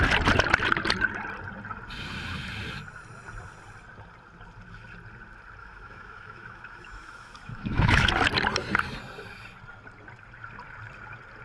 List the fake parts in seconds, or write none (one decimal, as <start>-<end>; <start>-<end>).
5.6-8.1